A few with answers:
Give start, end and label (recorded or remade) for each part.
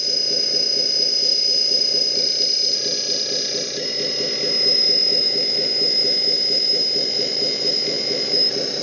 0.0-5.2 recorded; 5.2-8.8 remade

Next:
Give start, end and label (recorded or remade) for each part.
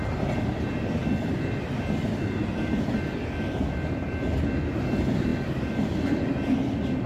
0.0-7.1 recorded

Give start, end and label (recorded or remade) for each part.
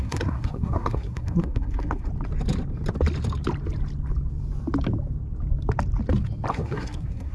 0.0-2.1 remade; 2.1-6.5 recorded; 6.5-7.3 remade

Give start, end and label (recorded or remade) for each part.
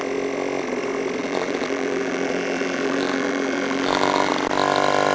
0.0-1.2 recorded; 1.2-4.3 remade; 4.3-5.1 recorded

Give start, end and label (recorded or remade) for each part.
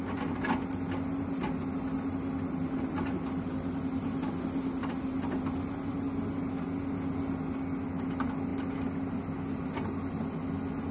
0.0-10.9 recorded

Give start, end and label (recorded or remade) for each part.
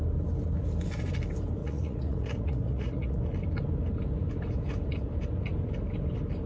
0.0-1.6 recorded; 1.6-3.2 remade; 3.2-6.5 recorded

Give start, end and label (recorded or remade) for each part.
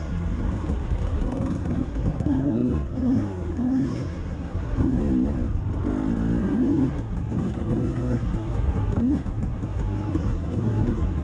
0.0-5.0 remade; 5.0-6.4 recorded; 6.4-11.2 remade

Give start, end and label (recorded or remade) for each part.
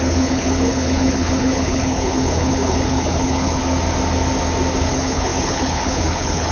0.0-3.6 remade; 3.6-4.8 recorded; 4.8-6.5 remade